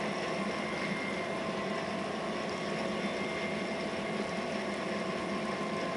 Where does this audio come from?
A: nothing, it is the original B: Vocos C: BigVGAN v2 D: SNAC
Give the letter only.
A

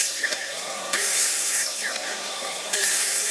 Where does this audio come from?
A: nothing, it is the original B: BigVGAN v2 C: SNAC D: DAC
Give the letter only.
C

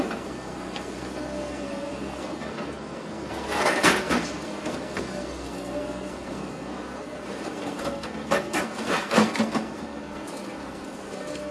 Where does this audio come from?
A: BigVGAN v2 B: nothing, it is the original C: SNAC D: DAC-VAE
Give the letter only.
C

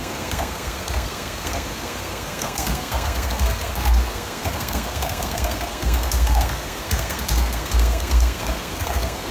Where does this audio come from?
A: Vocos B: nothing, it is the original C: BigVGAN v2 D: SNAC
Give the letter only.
D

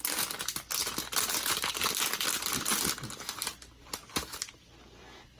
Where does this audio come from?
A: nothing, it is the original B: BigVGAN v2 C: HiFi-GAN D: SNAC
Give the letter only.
A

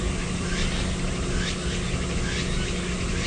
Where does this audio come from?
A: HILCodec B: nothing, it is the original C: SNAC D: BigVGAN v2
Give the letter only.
B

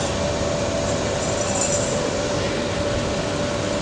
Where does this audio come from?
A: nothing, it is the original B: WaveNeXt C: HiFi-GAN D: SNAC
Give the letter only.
A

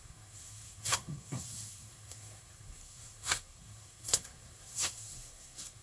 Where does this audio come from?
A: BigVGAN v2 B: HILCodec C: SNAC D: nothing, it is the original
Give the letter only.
C